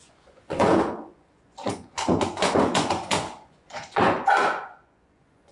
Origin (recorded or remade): remade